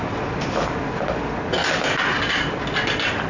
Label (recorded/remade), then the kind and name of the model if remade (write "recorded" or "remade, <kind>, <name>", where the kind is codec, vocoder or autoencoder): recorded